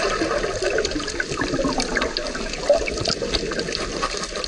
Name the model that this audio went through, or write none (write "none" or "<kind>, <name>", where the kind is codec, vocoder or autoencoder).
none